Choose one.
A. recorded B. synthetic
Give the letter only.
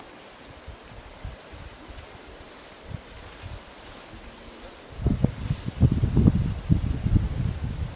A